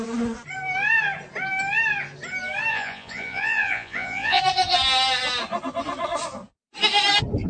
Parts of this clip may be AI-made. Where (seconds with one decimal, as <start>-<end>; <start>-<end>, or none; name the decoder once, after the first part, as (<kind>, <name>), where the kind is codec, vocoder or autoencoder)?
2.7-4.4 (vocoder, Vocos)